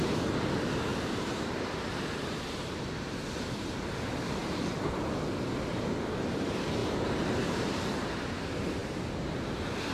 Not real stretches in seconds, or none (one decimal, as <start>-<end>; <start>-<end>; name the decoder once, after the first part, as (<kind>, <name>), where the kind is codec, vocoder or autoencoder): 0.9-2.7 (vocoder, BigVGAN v2); 4.4-5.0; 6.8-7.8